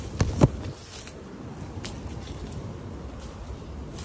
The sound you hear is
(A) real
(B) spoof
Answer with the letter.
A